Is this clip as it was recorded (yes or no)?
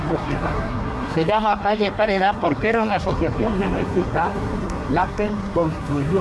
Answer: no